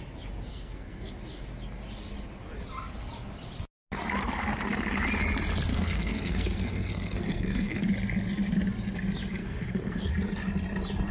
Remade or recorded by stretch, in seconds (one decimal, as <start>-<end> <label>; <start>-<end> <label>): 0.0-0.5 recorded; 0.5-1.1 remade; 1.1-5.7 recorded; 5.7-7.9 remade; 7.9-9.4 recorded; 9.4-10.1 remade; 10.1-11.1 recorded